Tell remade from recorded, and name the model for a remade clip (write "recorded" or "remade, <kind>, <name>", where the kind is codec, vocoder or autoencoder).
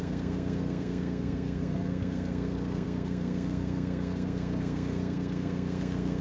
remade, codec, SNAC